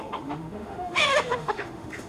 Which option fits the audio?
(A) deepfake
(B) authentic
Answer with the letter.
A